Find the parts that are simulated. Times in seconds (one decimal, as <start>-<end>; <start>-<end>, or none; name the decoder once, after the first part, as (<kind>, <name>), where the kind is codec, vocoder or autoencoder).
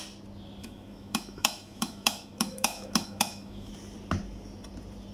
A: 0.6-3.7 (autoencoder, DAC-VAE)